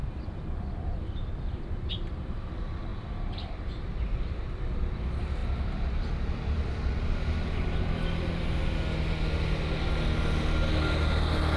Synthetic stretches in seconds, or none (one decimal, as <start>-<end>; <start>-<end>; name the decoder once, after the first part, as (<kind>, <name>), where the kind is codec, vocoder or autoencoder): 0.0-1.9 (vocoder, BigVGAN v2); 2.9-5.0